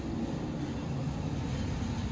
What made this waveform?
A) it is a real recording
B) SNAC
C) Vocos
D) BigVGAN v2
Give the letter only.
A